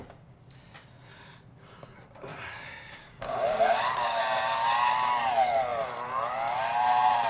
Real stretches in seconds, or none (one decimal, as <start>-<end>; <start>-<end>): 0.0-2.3; 4.2-7.3